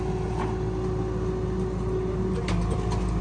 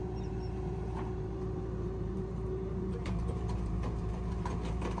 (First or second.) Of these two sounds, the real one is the first